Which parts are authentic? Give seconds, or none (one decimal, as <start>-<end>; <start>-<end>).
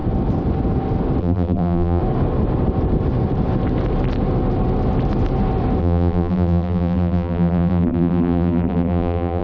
0.0-1.2; 2.0-5.8